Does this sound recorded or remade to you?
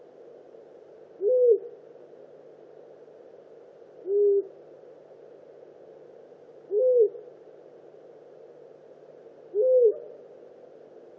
recorded